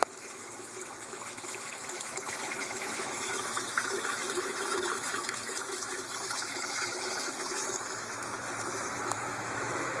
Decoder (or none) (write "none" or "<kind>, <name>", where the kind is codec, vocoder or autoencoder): autoencoder, DAC-VAE